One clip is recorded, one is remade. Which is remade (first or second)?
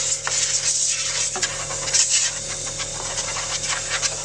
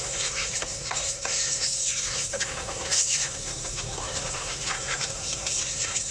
second